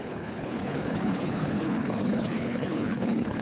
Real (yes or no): no